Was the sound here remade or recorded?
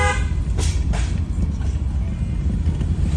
recorded